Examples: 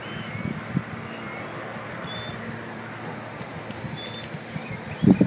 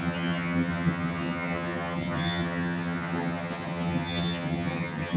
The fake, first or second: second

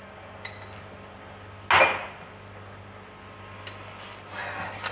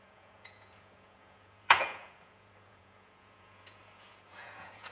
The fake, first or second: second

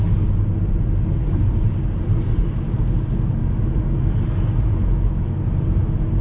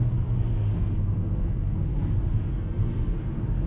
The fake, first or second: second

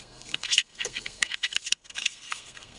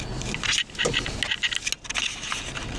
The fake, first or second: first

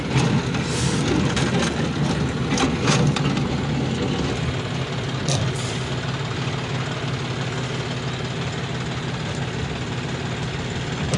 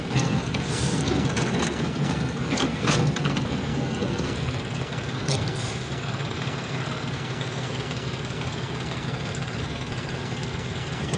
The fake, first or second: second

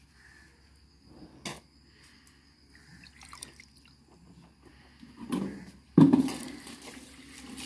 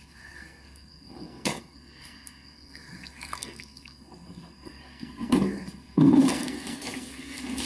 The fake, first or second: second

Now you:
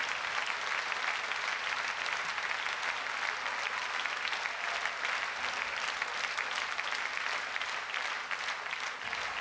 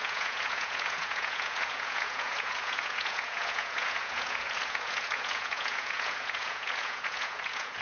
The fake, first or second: second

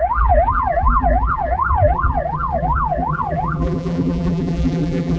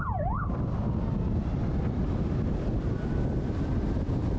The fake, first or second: first